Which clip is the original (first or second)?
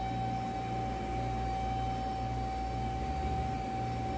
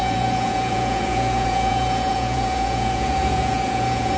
first